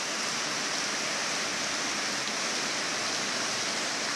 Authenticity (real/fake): real